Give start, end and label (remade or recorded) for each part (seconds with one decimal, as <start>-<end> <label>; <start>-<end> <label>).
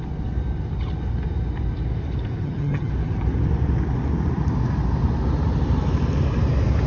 0.0-2.4 recorded; 2.4-2.9 remade; 2.9-6.9 recorded